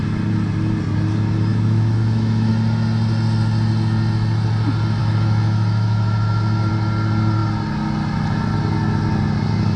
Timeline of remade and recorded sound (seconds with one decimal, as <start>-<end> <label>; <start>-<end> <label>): 0.0-1.5 recorded; 1.5-2.5 remade; 2.5-5.0 recorded; 5.0-6.7 remade; 6.7-9.8 recorded